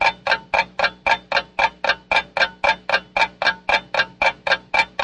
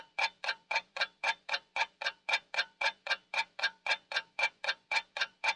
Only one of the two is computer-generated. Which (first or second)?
second